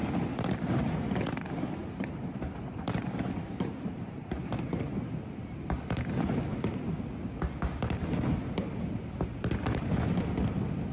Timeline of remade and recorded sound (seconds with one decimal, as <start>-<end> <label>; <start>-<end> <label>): 0.0-1.8 recorded; 1.8-4.4 remade; 4.4-10.9 recorded